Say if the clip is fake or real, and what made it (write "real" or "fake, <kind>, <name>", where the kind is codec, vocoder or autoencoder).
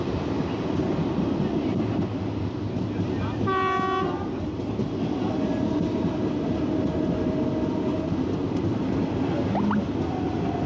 real